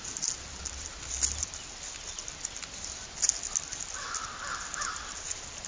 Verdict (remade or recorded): recorded